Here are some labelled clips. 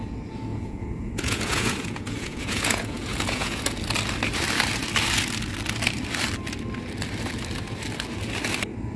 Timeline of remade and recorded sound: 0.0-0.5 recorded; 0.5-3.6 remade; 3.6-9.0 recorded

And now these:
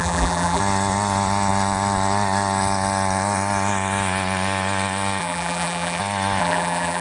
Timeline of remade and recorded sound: 0.0-0.6 remade; 0.6-5.2 recorded; 5.2-6.0 remade; 6.0-6.4 recorded; 6.4-7.0 remade

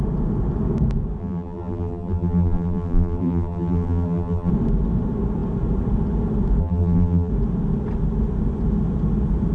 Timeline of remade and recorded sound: 0.0-1.2 recorded; 1.2-4.5 remade; 4.5-6.6 recorded; 6.6-7.3 remade; 7.3-9.5 recorded

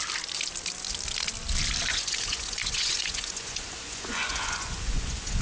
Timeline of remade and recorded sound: 0.0-1.9 recorded; 1.9-5.4 remade

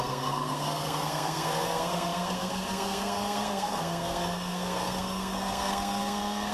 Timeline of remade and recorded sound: 0.0-6.5 remade